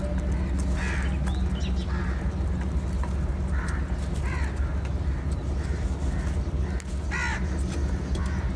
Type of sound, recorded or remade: recorded